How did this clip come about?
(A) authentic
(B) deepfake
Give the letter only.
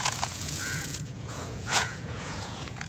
B